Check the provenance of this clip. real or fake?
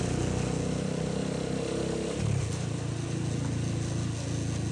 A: real